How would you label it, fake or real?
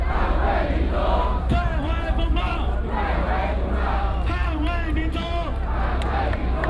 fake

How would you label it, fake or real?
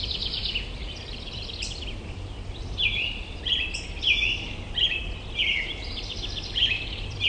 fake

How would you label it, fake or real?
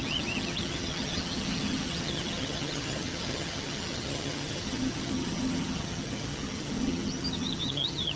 fake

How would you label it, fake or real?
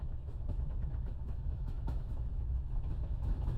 fake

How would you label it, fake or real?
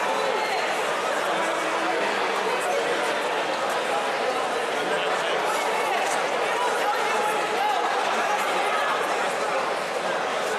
real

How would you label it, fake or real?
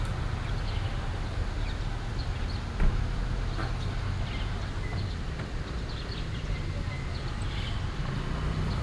real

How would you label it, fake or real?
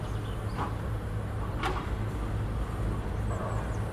real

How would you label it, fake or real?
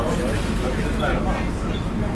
real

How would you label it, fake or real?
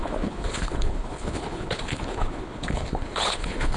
fake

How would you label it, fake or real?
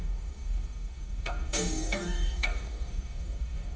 fake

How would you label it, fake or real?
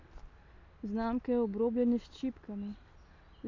real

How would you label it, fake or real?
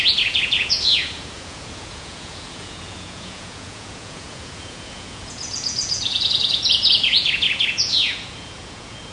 fake